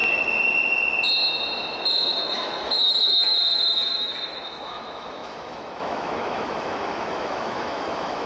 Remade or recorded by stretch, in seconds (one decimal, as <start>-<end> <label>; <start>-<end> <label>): 0.0-1.8 recorded; 1.8-8.3 remade